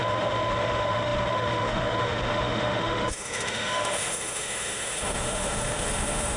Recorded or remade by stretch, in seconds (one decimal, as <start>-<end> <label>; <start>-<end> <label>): 0.0-6.4 remade